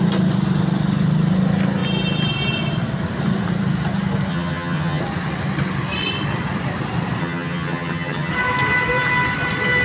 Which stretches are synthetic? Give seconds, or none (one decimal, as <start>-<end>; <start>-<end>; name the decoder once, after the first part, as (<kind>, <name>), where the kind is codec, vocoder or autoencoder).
4.3-5.0 (vocoder, HiFi-GAN); 7.2-8.3